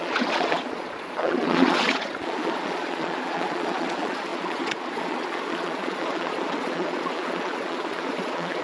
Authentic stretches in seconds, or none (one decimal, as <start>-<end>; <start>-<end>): none